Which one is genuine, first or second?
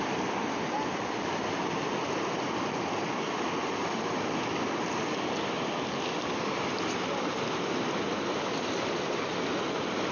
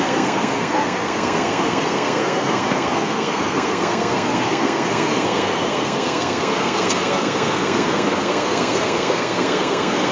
first